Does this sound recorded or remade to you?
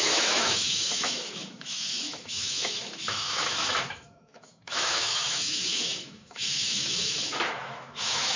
remade